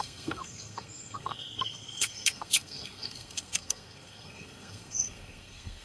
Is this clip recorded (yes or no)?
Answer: no